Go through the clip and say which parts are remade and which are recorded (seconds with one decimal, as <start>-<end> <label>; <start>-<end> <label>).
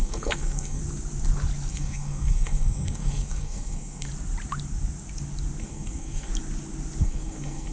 0.0-0.8 remade; 0.8-1.7 recorded; 1.7-4.1 remade; 4.1-5.6 recorded; 5.6-6.3 remade; 6.3-7.0 recorded; 7.0-7.7 remade